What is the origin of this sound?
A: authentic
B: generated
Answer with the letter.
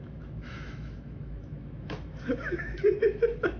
B